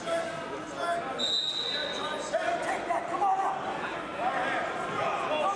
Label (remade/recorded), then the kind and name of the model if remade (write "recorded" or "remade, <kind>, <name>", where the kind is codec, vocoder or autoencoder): recorded